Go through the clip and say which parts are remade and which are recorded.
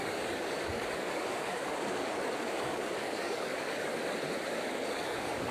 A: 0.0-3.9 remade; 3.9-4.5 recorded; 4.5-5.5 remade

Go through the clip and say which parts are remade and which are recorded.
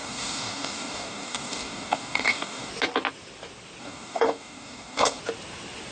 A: 0.0-2.7 remade; 2.7-3.8 recorded; 3.8-5.2 remade; 5.2-5.9 recorded